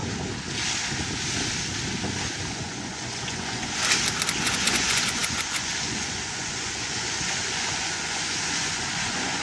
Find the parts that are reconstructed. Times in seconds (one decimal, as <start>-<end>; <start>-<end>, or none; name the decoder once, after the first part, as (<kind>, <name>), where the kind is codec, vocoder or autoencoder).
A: 2.5-3.8 (vocoder, Vocos); 4.4-9.4